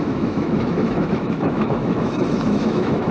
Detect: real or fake fake